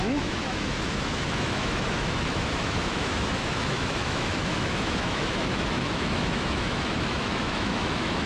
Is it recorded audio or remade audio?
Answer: remade